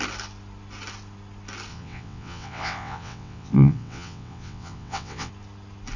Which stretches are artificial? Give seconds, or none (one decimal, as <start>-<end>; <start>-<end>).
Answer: 1.7-5.3